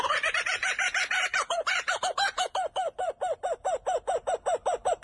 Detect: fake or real fake